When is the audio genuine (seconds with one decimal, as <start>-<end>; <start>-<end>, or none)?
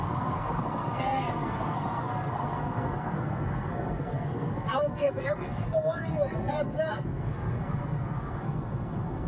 none